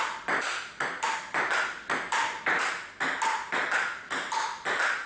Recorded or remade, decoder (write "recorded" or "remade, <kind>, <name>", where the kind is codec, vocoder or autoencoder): recorded